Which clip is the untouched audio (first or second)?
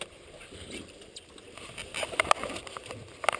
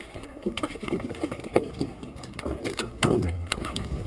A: first